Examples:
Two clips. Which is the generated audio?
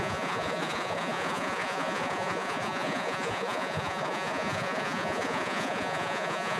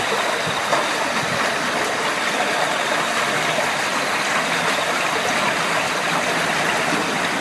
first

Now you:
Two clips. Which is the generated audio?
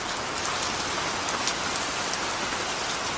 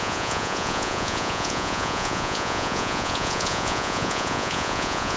second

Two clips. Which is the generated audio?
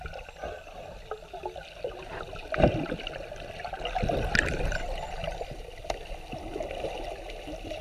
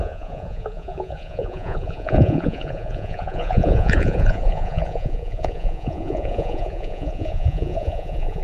second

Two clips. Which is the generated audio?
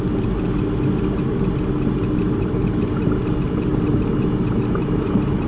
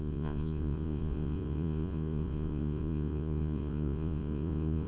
second